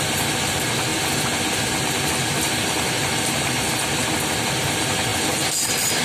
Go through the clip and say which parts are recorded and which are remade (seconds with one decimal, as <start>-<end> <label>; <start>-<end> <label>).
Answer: 0.0-6.0 recorded